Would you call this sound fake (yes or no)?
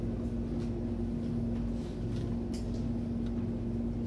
no